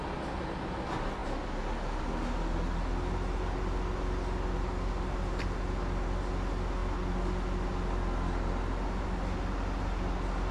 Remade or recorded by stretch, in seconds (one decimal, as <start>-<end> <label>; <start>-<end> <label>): 0.0-10.5 recorded